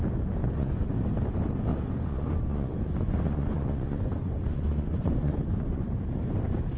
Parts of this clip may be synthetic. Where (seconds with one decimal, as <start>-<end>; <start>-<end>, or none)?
0.4-0.9; 1.7-5.8